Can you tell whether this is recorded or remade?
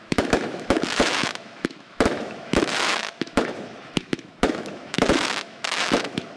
remade